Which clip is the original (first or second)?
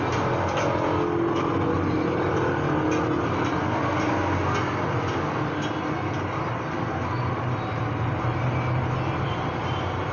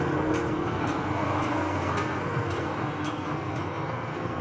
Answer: first